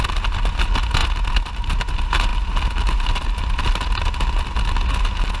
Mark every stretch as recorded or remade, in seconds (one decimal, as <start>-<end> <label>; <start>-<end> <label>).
0.0-5.4 recorded